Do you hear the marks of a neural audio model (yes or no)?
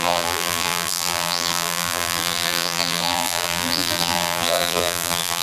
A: yes